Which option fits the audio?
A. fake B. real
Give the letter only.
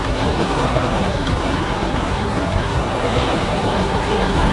A